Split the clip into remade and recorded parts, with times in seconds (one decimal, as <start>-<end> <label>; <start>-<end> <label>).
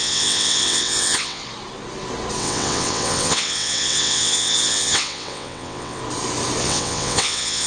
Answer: 0.0-1.4 remade; 1.4-2.4 recorded; 2.4-6.0 remade; 6.0-6.6 recorded; 6.6-7.7 remade